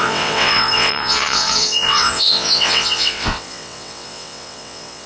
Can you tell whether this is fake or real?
fake